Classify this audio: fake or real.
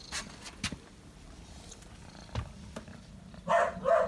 fake